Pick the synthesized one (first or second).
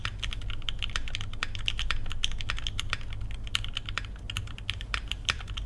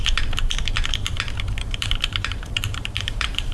second